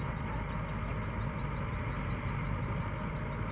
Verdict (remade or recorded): recorded